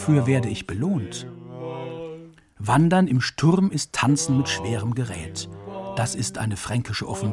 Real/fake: real